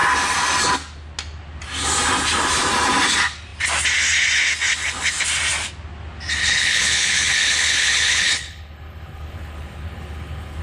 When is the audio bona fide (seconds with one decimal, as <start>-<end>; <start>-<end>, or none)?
0.0-6.4